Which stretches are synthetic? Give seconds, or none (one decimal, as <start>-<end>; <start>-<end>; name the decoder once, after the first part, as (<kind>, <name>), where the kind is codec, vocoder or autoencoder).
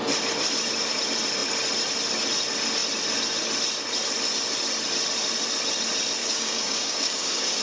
6.2-7.6 (codec, DAC)